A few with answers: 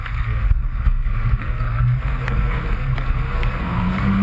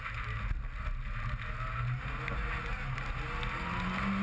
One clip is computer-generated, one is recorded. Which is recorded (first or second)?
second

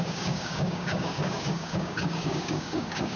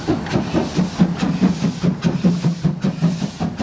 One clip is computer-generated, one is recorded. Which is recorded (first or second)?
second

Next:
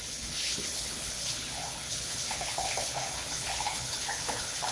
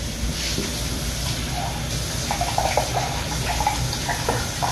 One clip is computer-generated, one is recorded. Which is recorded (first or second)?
second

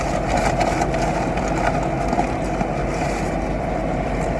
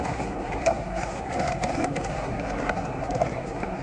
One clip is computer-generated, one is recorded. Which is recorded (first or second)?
first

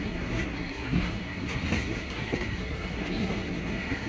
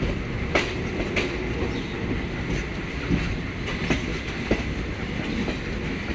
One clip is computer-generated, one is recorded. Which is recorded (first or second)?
second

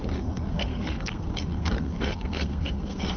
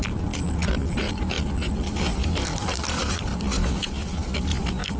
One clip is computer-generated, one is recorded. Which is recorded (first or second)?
second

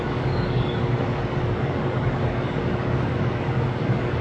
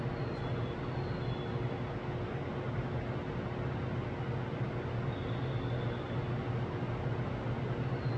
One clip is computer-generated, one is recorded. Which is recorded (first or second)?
second